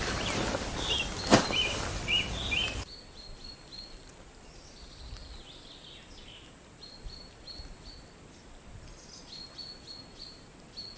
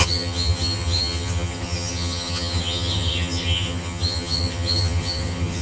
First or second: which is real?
first